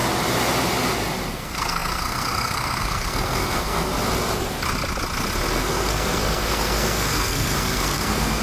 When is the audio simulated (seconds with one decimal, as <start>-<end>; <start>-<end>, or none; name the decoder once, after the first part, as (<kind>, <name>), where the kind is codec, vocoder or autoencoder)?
1.3-3.9 (codec, SNAC); 5.5-8.4